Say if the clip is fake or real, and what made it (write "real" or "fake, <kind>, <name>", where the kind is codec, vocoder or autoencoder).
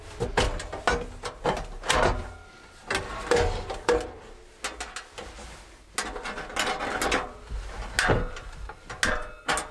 real